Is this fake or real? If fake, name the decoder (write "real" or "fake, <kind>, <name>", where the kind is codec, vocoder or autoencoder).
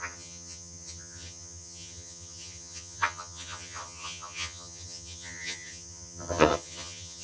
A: fake, vocoder, HiFi-GAN